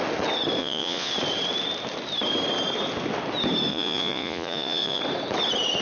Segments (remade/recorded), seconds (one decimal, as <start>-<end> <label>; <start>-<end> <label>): 0.0-0.6 recorded; 0.6-1.1 remade; 1.1-3.7 recorded; 3.7-5.0 remade; 5.0-5.8 recorded